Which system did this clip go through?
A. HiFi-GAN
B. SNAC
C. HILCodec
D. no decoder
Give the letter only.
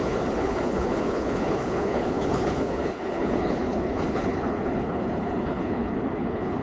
C